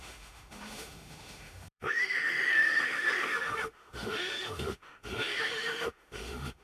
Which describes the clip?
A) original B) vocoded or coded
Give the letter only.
B